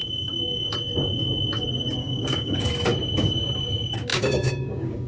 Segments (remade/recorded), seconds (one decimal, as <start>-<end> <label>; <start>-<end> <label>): 0.0-0.7 remade; 0.7-2.0 recorded; 2.0-2.7 remade; 2.7-4.1 recorded; 4.1-5.1 remade